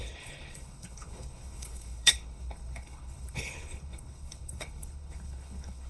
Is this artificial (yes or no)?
yes